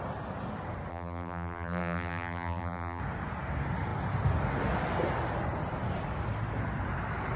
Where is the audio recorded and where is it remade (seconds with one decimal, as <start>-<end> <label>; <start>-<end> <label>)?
0.0-0.9 recorded; 0.9-3.0 remade; 3.0-7.4 recorded